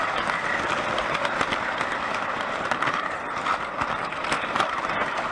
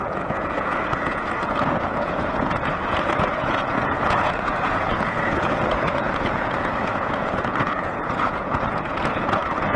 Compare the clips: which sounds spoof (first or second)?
second